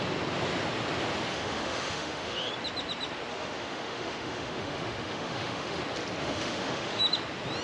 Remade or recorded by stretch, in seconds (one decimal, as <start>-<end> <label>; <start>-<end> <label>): 0.0-1.3 recorded; 1.3-2.5 remade; 2.5-3.3 recorded; 3.3-5.8 remade; 5.8-6.2 recorded; 6.2-7.0 remade; 7.0-7.6 recorded